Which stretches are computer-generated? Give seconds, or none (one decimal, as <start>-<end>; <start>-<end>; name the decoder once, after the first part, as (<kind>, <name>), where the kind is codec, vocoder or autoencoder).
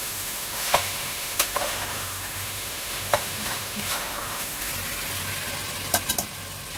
0.0-4.7 (autoencoder, DAC-VAE)